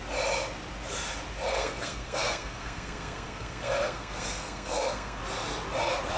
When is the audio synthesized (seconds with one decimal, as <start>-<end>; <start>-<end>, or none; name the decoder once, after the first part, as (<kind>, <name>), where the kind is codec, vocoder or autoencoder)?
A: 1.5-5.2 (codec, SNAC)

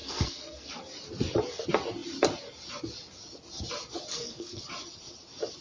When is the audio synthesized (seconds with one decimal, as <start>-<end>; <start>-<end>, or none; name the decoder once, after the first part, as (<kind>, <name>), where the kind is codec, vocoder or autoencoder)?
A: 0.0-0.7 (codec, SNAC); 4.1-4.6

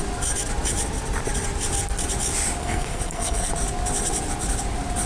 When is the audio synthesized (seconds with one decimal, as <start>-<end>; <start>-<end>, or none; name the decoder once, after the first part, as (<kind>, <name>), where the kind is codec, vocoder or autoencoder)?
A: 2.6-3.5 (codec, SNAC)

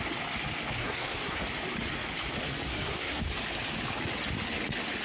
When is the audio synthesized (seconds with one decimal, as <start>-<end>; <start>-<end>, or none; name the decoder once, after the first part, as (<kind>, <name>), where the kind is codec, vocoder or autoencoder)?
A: 0.8-1.4 (codec, SNAC); 2.7-3.2

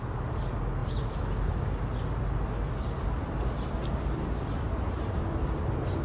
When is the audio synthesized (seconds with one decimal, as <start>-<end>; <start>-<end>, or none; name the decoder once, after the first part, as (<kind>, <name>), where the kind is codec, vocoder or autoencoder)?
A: none

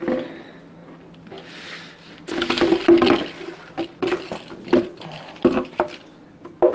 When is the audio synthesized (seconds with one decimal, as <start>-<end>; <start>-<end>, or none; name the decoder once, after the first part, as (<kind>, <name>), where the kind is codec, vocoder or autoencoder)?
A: none

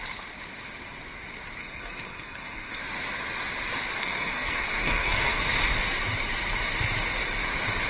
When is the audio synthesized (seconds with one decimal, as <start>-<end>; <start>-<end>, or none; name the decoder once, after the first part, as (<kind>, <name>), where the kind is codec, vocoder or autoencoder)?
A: 1.6-2.8 (codec, SNAC); 4.0-5.4